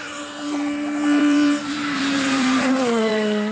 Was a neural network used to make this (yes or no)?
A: yes